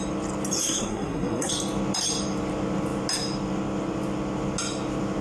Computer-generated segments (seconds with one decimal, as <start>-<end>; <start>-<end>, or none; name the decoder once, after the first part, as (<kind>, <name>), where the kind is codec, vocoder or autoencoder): 0.6-1.5 (codec, SNAC)

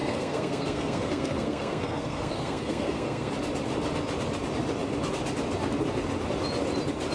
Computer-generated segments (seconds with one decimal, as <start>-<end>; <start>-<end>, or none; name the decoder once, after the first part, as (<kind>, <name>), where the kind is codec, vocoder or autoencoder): 0.0-3.3 (codec, SNAC)

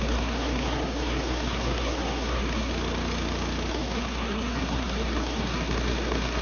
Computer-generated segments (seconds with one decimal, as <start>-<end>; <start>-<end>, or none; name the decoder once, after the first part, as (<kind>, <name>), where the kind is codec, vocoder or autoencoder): 0.0-2.7 (codec, SNAC); 3.7-6.4

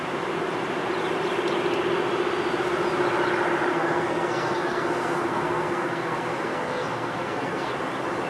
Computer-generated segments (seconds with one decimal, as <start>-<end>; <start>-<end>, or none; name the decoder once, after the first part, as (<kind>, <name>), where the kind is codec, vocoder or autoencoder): 3.7-7.7 (codec, SNAC)

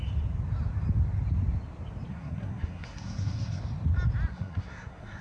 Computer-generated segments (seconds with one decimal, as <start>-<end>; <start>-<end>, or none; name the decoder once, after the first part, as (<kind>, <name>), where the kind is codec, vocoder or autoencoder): 2.1-3.6 (codec, SNAC); 4.3-5.2

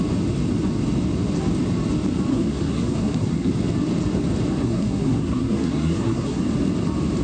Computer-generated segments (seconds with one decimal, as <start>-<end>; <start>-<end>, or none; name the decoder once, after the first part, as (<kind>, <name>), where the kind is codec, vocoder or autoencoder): 2.3-3.5 (codec, SNAC); 4.6-6.4